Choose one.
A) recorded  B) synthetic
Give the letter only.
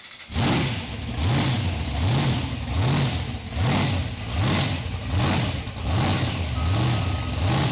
A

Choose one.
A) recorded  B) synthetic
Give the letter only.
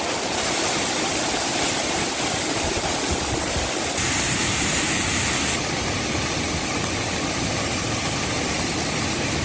A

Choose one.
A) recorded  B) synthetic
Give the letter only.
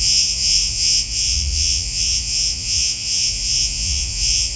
B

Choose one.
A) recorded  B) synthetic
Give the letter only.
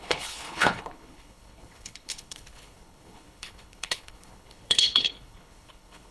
B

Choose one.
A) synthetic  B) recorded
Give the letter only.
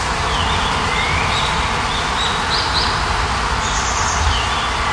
B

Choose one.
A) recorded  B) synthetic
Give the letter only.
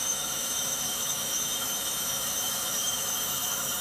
B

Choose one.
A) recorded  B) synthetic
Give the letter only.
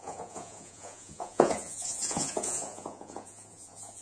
B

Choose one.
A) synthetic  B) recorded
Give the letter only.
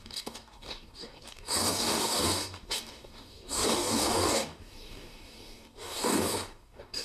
A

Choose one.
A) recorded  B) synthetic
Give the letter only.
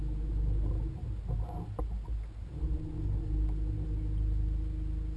A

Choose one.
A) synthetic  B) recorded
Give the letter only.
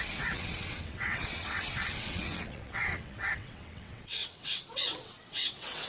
A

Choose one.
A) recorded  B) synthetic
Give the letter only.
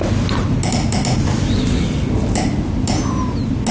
A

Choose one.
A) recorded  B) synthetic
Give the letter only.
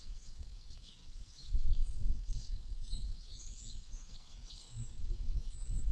B